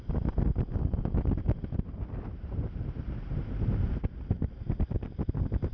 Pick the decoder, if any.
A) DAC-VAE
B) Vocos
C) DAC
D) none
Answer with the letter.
D